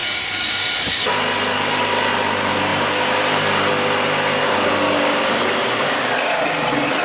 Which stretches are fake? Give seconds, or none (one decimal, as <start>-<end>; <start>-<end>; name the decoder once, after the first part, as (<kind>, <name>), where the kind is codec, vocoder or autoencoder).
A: 0.0-1.1 (codec, DAC); 4.4-5.4